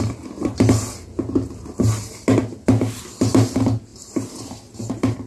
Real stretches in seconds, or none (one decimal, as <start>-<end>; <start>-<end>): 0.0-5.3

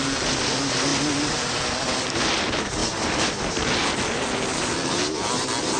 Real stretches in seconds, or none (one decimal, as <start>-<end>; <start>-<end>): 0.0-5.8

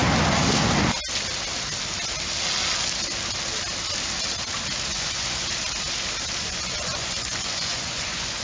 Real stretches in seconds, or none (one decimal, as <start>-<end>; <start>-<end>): 0.0-4.9; 5.5-6.4

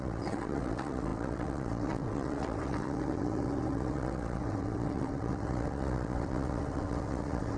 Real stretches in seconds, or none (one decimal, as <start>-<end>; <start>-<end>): none

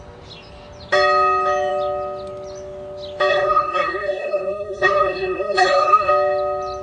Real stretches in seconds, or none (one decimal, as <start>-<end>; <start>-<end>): 0.0-3.3; 6.1-6.8

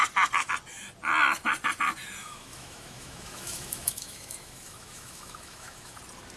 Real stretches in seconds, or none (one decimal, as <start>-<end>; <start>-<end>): 0.0-2.2; 6.0-6.4

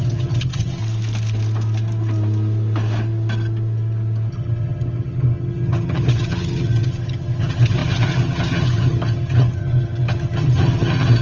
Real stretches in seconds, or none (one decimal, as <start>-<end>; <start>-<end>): 0.8-4.3